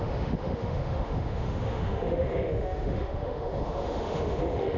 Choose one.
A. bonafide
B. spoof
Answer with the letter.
B